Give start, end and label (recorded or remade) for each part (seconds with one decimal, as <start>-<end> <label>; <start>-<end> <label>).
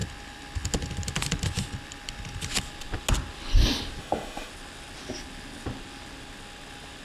0.0-4.0 recorded; 4.0-4.5 remade; 4.5-7.0 recorded